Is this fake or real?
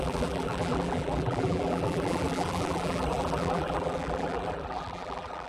fake